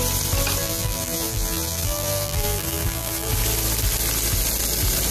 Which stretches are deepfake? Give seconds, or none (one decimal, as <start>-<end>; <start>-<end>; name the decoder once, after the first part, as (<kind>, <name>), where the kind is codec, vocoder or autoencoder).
0.6-3.3 (vocoder, BigVGAN v2)